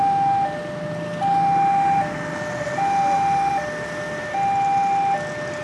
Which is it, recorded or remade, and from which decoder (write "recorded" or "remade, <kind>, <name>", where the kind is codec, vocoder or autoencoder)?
recorded